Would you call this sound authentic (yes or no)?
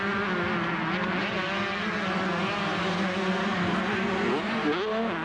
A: yes